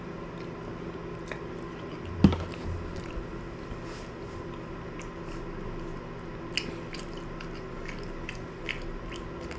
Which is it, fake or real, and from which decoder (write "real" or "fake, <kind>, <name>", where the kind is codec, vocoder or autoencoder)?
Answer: real